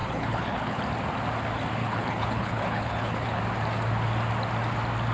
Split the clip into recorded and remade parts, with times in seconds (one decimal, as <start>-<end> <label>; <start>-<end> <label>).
0.0-0.8 remade; 0.8-1.8 recorded; 1.8-3.4 remade; 3.4-5.1 recorded